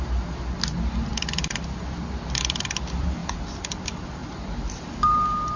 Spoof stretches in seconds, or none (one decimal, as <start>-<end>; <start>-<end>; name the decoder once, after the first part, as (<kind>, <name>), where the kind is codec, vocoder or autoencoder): 1.1-1.8 (vocoder, BigVGAN v2); 3.2-3.8; 4.2-4.9